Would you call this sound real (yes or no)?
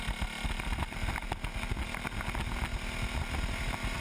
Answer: yes